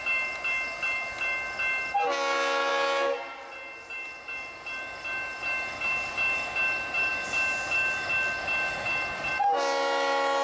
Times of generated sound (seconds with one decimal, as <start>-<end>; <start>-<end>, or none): none